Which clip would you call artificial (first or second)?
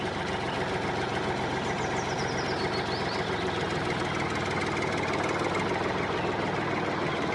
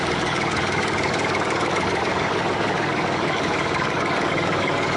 second